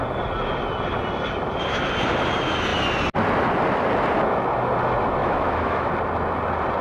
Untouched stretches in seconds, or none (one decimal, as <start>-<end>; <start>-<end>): 0.0-5.2; 5.9-6.8